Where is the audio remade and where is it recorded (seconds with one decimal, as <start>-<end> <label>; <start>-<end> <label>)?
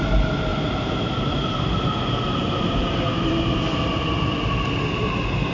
0.0-0.5 recorded; 0.5-3.8 remade; 3.8-5.5 recorded